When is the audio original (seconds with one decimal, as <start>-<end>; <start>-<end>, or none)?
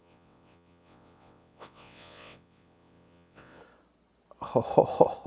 3.6-5.3